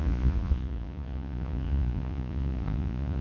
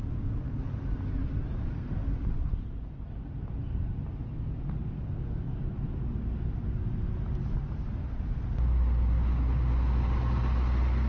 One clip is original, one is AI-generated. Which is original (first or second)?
second